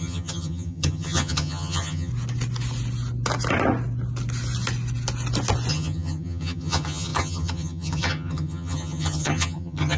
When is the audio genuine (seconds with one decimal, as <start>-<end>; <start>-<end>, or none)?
2.1-5.7